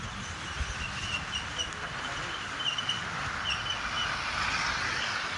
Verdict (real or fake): real